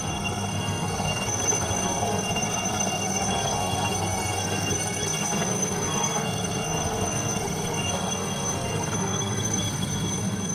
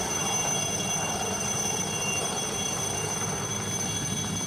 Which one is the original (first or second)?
second